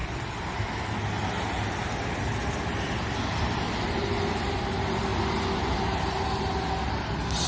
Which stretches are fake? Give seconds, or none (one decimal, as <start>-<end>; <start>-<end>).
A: none